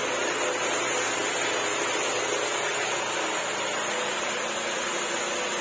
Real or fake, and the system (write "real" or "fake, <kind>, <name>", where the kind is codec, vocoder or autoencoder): real